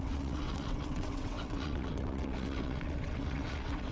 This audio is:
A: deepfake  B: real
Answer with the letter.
A